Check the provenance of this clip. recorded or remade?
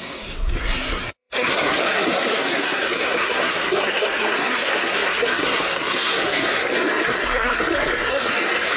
remade